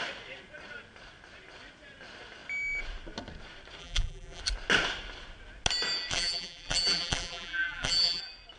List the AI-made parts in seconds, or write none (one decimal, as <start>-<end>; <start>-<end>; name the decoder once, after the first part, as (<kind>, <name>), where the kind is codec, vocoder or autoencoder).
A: 3.8-4.4 (vocoder, BigVGAN v2); 6.1-8.2